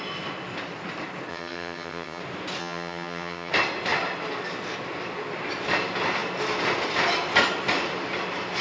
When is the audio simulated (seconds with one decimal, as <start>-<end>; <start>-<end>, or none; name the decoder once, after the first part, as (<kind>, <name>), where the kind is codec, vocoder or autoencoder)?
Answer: 1.3-2.2 (vocoder, HiFi-GAN); 2.6-3.5